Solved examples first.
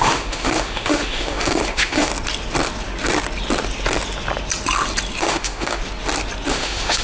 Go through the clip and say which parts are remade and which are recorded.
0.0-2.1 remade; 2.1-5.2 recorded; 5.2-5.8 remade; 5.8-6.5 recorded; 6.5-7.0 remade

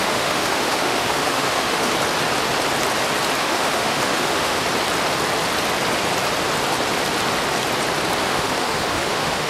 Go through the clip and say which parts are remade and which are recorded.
0.0-1.9 remade; 1.9-3.4 recorded; 3.4-4.6 remade; 4.6-8.2 recorded; 8.2-9.5 remade